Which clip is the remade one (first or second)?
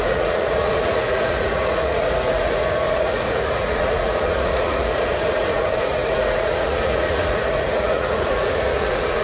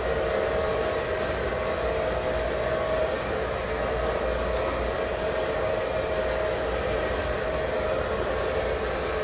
first